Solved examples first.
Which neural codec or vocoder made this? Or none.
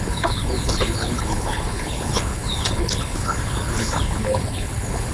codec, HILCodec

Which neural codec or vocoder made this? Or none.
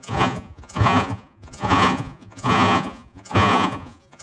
vocoder, Vocos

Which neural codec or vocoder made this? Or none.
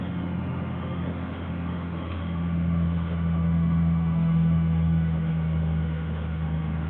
autoencoder, DAC-VAE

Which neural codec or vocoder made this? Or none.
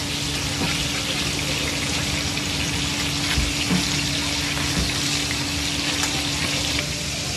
none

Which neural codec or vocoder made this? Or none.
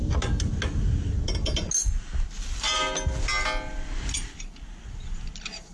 none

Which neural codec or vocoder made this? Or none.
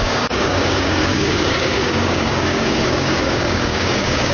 codec, DAC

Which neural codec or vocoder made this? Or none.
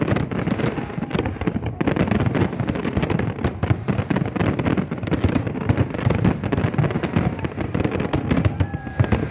none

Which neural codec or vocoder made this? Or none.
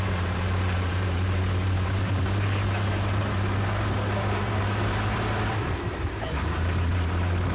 vocoder, BigVGAN v2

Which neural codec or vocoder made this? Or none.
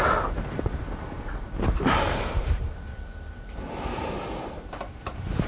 vocoder, BigVGAN v2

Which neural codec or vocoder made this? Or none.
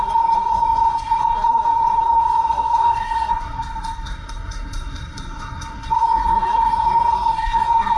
codec, SNAC